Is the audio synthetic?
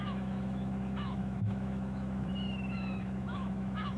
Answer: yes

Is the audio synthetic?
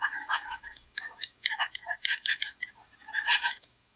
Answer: yes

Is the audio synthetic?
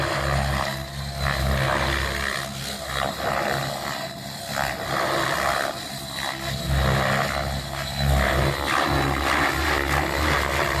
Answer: no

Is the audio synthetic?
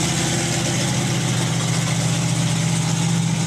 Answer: no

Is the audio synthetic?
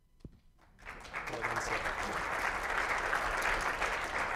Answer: no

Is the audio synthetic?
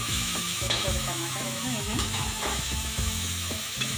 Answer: yes